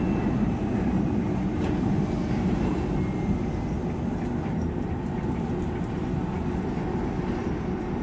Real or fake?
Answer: real